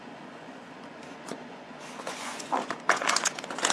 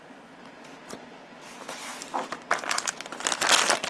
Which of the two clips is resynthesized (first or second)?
first